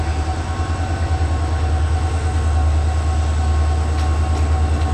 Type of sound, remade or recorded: recorded